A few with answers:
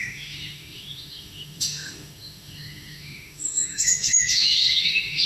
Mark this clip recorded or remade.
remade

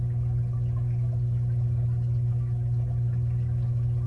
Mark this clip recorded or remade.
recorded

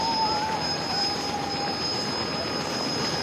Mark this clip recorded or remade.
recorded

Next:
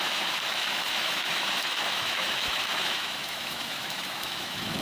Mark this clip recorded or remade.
remade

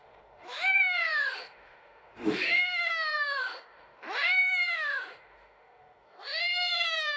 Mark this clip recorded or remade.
remade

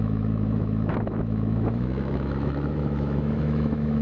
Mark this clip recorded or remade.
remade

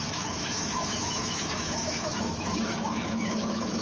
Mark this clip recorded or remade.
remade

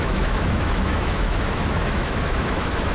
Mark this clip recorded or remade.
remade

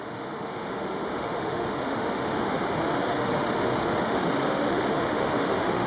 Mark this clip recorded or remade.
remade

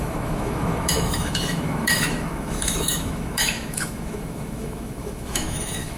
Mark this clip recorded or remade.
remade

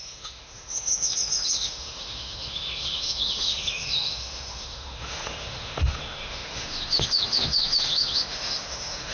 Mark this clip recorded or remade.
remade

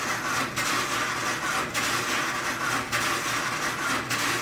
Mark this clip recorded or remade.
recorded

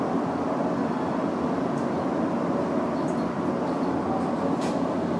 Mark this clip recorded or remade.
recorded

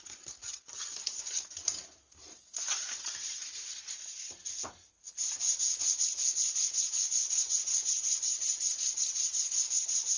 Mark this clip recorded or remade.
recorded